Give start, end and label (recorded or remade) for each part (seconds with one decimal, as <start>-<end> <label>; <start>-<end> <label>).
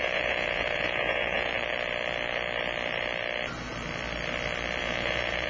0.0-1.5 remade; 1.5-4.8 recorded; 4.8-5.5 remade